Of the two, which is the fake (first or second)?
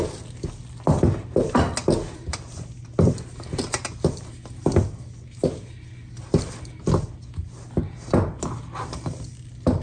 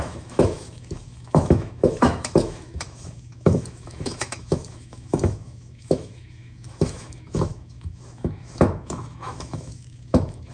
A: second